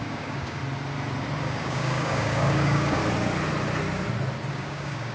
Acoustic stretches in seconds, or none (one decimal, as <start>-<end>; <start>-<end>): 0.6-1.4; 3.0-4.5